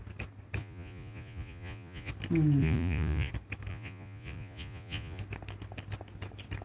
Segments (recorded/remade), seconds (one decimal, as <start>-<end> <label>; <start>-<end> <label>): 0.0-0.6 recorded; 0.6-2.1 remade; 2.1-2.6 recorded; 2.6-3.3 remade; 3.3-3.7 recorded; 3.7-5.2 remade; 5.2-6.6 recorded